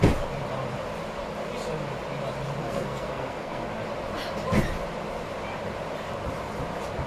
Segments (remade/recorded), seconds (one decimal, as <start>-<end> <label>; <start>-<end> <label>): 0.0-2.6 recorded; 2.6-3.7 remade; 3.7-7.1 recorded